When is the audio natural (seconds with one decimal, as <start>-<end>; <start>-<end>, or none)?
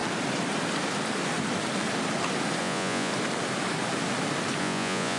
0.0-2.6; 3.1-4.6